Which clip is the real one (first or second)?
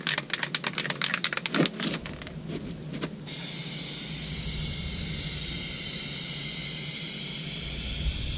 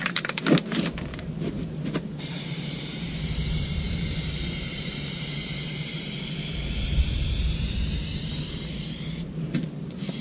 first